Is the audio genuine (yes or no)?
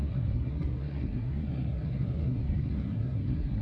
no